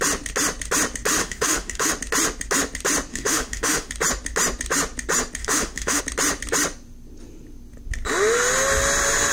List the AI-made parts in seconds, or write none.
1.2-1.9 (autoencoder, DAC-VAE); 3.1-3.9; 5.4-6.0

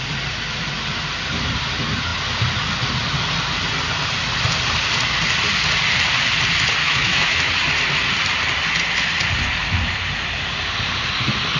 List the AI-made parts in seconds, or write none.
6.8-7.5 (autoencoder, DAC-VAE)

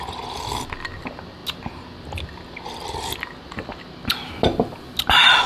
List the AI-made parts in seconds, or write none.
none